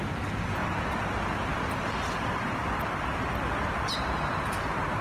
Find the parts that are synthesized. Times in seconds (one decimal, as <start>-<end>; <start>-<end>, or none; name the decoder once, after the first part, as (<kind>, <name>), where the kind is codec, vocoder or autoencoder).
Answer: none